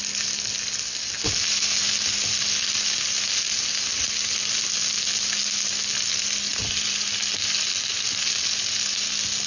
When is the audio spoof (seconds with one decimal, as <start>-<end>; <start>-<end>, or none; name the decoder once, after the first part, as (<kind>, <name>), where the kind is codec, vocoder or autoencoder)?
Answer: none